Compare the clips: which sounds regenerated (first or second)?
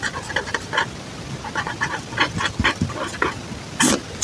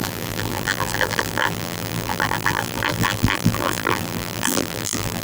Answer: second